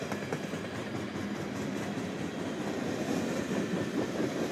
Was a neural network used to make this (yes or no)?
no